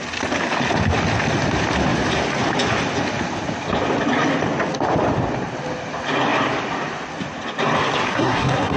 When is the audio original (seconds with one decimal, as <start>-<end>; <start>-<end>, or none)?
0.0-8.1